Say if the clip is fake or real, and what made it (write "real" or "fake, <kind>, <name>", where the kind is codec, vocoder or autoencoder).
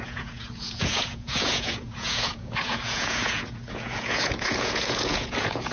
fake, vocoder, Vocos